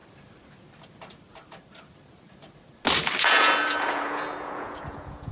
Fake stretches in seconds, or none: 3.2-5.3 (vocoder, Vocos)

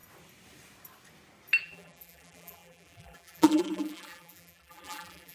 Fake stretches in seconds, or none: 1.6-5.3 (vocoder, BigVGAN v2)

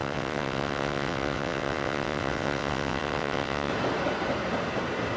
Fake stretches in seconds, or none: 0.0-3.7 (vocoder, WaveNeXt)

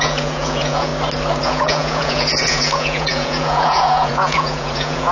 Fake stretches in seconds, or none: 0.0-0.9 (vocoder, Vocos); 1.4-5.1

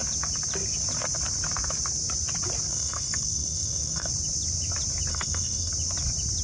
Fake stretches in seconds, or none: 2.7-4.1 (codec, SNAC); 5.1-5.7